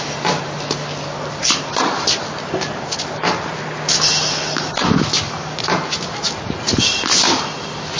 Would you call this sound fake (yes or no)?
no